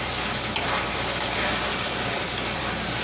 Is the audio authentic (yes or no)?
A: yes